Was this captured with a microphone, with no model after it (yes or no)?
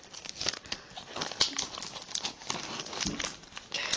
yes